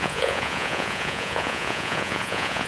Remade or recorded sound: remade